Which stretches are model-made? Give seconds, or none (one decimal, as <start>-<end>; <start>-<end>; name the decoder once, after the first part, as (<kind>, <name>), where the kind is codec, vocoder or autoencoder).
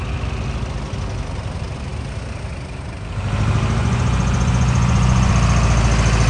3.8-5.3 (vocoder, Vocos)